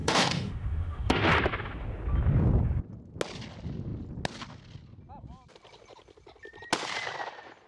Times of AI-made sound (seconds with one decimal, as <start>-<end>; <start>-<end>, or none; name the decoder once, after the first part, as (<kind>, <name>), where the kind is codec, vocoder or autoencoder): 0.0-1.3 (autoencoder, DAC-VAE)